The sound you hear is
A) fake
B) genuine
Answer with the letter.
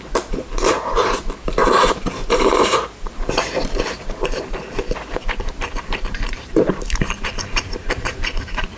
A